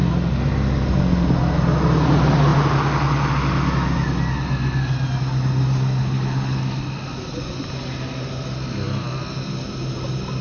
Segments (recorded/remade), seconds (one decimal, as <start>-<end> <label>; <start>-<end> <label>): 0.0-6.0 recorded; 6.0-6.6 remade; 6.6-10.4 recorded